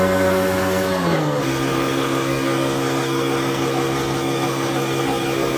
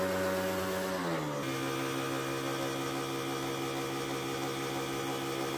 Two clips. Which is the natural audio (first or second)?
second